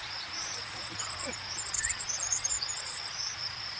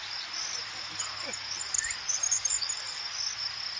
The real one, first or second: second